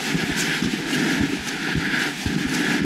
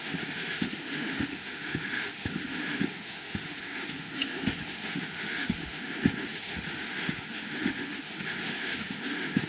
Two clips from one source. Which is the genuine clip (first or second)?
first